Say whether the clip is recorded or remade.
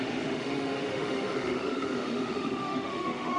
remade